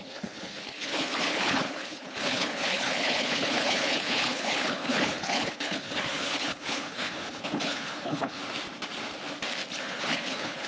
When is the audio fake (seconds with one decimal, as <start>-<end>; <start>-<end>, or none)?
0.0-8.4; 9.8-10.7